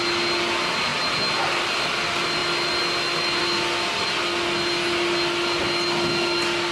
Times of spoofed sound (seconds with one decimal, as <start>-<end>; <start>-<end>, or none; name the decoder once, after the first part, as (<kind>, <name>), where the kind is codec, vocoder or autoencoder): none